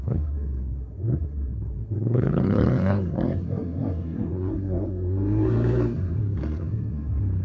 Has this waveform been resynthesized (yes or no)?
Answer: yes